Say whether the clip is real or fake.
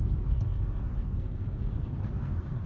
fake